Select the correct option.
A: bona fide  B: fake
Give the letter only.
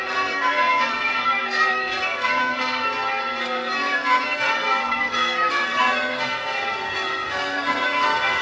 B